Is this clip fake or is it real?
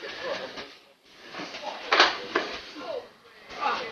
real